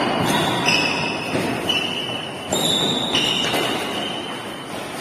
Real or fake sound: real